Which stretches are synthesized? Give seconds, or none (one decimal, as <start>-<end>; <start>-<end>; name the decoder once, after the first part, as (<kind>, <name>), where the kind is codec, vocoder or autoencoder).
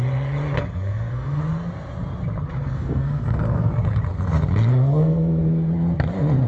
0.6-1.4 (codec, SNAC); 2.6-3.7; 4.7-5.4